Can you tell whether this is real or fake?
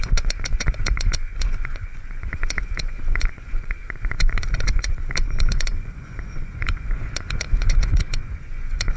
fake